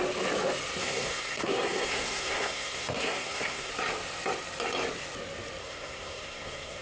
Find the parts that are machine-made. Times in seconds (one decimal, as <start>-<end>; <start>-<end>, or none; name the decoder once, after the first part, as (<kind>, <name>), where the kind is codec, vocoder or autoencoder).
0.8-3.7 (codec, SNAC); 5.6-6.8

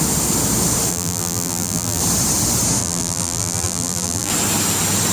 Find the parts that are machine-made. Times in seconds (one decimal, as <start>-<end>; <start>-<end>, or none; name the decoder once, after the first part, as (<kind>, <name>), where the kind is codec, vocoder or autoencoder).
0.9-2.0 (vocoder, BigVGAN v2); 2.8-4.3

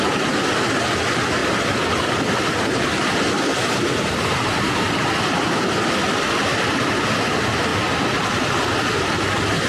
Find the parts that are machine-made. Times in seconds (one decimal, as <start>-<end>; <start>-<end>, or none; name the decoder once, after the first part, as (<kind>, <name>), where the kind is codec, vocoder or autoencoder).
none

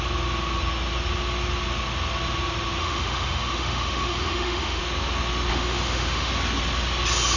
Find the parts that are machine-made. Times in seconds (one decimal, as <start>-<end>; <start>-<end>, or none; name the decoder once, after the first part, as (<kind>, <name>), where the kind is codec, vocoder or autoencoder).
2.8-4.8 (autoencoder, DAC-VAE); 5.5-6.3